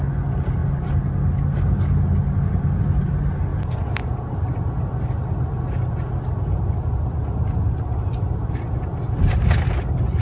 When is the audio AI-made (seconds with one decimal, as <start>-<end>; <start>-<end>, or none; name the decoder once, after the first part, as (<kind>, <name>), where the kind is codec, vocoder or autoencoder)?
none